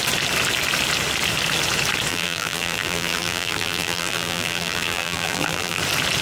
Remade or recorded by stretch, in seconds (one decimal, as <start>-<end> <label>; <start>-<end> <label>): 0.0-2.1 recorded; 2.1-5.8 remade; 5.8-6.2 recorded